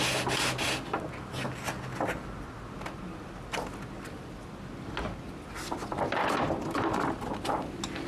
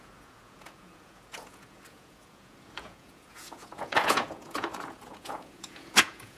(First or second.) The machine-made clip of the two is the second